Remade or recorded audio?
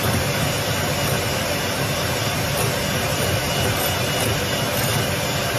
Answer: recorded